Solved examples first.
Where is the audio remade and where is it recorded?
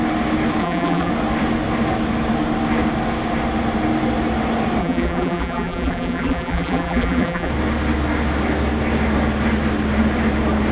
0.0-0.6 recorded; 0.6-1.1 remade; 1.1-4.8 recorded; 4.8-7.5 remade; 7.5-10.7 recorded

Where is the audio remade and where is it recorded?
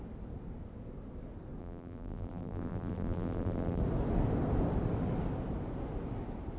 0.0-1.6 recorded; 1.6-3.8 remade; 3.8-6.6 recorded